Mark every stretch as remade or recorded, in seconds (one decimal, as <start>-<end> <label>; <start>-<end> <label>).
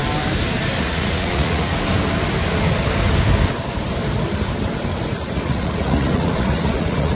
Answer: 0.0-0.8 recorded; 0.8-1.7 remade; 1.7-5.2 recorded; 5.2-7.2 remade